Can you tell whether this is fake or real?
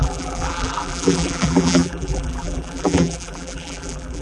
fake